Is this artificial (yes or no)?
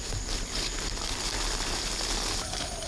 no